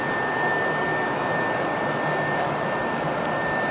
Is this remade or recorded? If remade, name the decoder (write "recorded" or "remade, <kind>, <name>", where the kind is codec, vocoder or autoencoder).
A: recorded